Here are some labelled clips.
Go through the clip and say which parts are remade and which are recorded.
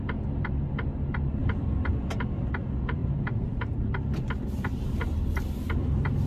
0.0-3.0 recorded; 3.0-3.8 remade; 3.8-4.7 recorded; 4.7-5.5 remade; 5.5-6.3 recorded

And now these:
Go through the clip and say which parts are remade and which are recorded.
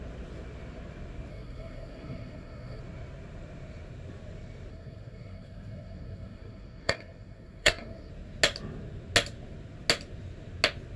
0.0-1.3 recorded; 1.3-2.8 remade; 2.8-4.7 recorded; 4.7-8.1 remade; 8.1-11.0 recorded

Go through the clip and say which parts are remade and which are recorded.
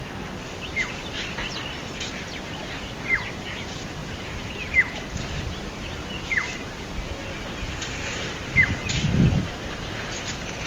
0.0-4.0 recorded; 4.0-5.8 remade; 5.8-10.7 recorded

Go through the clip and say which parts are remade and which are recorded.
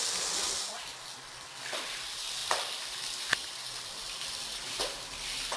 0.0-5.6 recorded